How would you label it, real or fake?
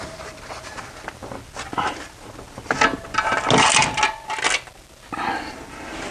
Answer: real